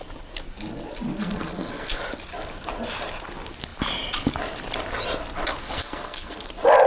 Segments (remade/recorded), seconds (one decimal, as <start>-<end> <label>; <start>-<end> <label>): 0.0-1.2 recorded; 1.2-2.0 remade; 2.0-5.6 recorded; 5.6-6.5 remade; 6.5-6.9 recorded